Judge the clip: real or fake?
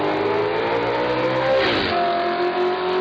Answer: real